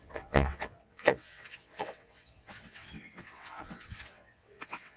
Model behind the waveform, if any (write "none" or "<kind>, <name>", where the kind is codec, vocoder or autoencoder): vocoder, WaveNeXt